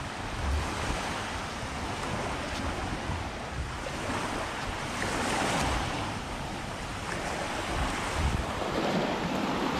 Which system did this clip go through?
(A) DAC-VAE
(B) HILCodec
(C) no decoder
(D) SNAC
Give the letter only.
C